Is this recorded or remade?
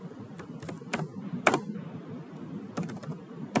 recorded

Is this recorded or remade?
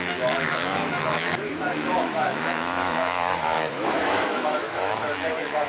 remade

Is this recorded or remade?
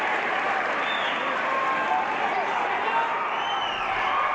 recorded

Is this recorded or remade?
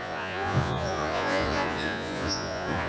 remade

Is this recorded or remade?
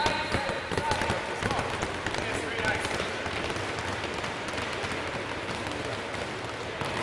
recorded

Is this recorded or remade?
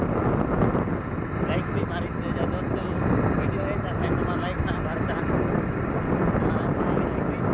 recorded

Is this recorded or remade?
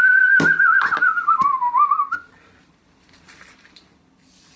recorded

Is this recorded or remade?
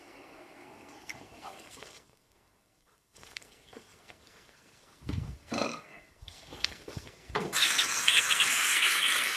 remade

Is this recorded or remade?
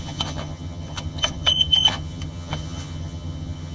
remade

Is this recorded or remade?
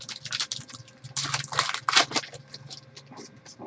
recorded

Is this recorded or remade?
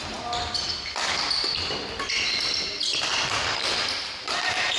recorded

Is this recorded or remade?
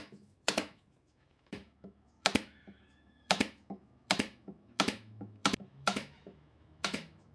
remade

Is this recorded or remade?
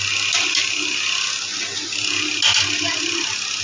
recorded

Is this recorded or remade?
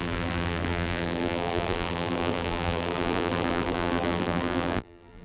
remade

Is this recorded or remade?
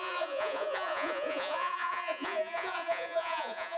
remade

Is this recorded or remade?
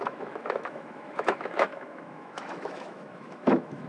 remade